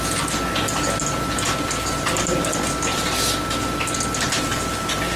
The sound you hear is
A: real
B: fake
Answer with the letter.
A